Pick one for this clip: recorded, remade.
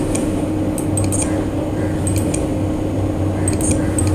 recorded